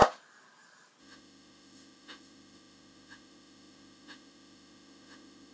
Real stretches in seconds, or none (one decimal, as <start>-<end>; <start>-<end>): 0.0-1.0